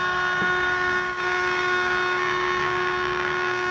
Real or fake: fake